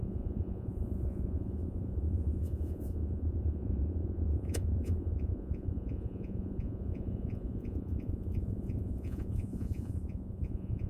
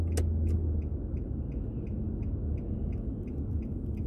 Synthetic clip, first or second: first